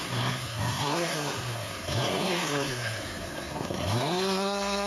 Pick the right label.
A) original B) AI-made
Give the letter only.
B